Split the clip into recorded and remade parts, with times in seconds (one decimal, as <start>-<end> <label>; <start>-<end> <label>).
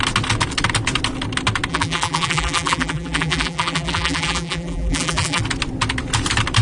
0.0-1.7 recorded; 1.7-5.4 remade; 5.4-6.6 recorded